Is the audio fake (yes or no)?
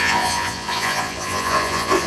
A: yes